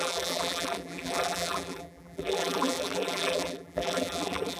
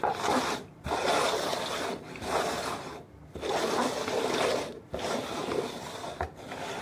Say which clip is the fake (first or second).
first